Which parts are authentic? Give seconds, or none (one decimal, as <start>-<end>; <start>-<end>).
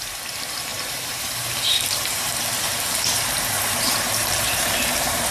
none